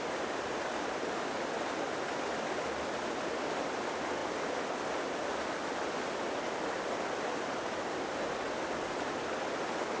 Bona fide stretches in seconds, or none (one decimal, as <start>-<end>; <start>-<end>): 0.0-10.0